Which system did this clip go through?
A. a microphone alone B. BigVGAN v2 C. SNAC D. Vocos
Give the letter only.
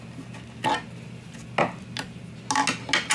A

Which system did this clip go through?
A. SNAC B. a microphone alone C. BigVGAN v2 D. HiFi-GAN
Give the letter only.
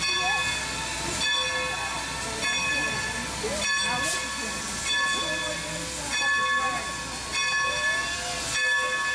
B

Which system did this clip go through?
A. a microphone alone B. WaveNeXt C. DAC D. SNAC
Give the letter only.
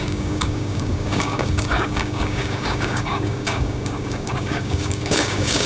C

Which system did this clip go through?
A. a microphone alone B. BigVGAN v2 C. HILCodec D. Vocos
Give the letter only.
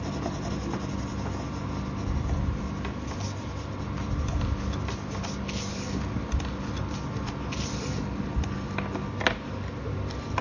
A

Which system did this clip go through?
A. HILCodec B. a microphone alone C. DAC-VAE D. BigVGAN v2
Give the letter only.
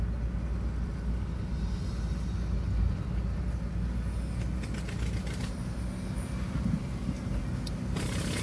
B